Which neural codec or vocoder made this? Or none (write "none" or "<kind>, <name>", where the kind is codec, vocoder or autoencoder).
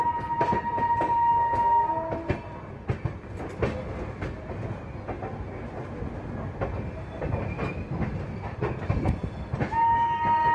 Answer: none